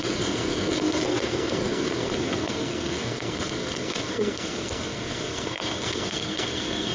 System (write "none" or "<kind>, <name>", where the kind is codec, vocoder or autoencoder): codec, SNAC